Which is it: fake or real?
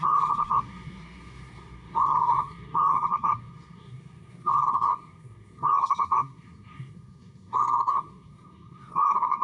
fake